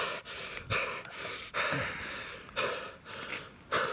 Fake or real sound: real